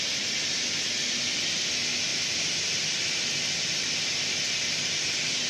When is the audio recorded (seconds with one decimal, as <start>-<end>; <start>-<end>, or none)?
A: 0.0-5.5